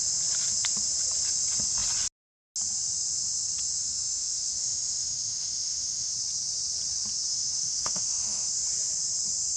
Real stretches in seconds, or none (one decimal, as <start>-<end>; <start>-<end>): 0.0-3.8; 6.1-7.3; 8.5-9.6